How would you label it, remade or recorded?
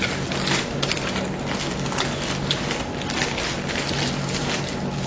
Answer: recorded